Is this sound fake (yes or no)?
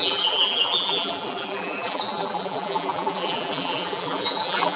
yes